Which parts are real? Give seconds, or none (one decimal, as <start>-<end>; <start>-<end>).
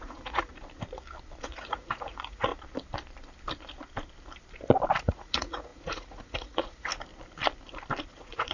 0.5-1.4; 2.5-5.0; 6.9-8.1